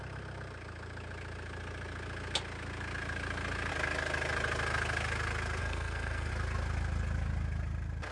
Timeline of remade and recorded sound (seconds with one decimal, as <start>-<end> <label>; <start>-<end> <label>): 0.0-5.6 recorded; 5.6-6.3 remade; 6.3-8.1 recorded